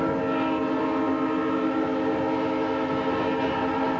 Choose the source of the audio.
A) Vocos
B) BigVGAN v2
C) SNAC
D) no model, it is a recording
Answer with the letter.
D